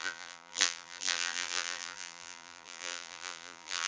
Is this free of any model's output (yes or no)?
no